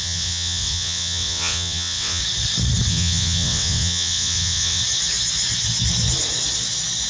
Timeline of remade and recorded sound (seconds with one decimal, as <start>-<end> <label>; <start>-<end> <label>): 0.0-2.2 remade; 2.2-2.9 recorded; 2.9-4.8 remade; 4.8-7.1 recorded